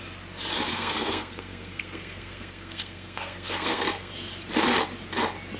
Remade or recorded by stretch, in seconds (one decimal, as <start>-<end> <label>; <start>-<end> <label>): 0.0-0.7 recorded; 0.7-4.1 remade; 4.1-5.6 recorded